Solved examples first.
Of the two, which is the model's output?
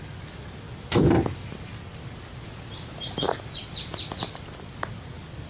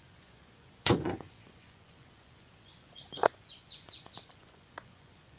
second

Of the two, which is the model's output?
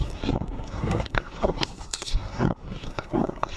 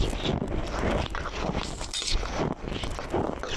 first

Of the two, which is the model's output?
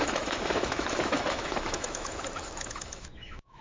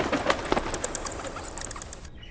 first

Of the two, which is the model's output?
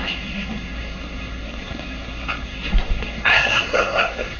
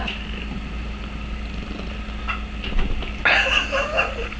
first